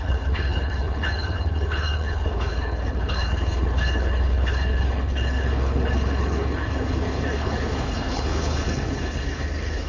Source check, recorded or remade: remade